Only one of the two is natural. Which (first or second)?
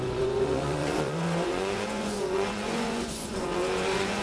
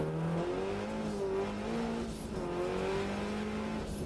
second